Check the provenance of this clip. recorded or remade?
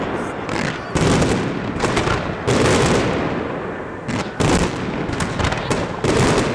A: recorded